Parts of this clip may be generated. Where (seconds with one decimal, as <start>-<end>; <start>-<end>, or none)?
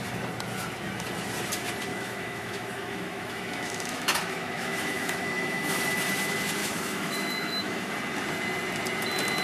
1.9-5.8; 6.6-7.9